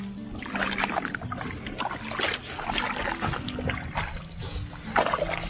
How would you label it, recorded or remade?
recorded